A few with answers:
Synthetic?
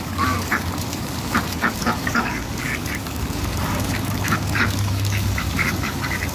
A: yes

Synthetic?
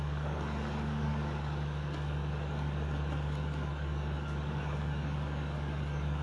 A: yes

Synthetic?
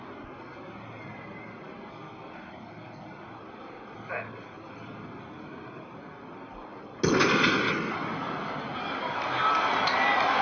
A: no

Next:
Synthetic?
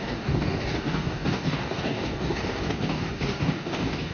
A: yes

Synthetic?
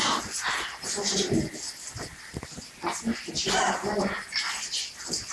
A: no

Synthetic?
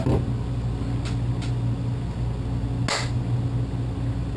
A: no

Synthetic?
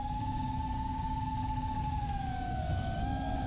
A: yes